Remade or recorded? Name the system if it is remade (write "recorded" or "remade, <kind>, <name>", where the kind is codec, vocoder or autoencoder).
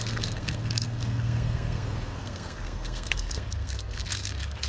remade, codec, SNAC